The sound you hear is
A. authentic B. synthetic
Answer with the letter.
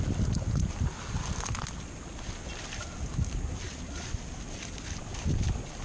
A